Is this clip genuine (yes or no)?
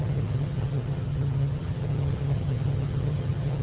no